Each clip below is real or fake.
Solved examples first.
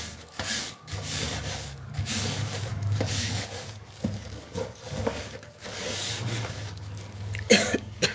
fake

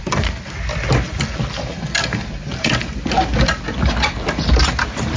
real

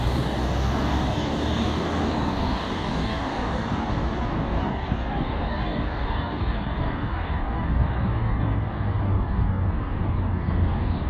fake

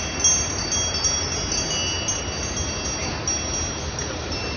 real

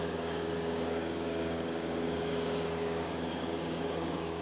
fake